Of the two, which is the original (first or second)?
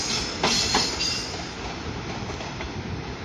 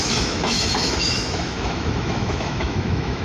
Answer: first